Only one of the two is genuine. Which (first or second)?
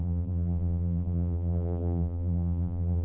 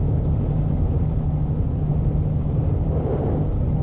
second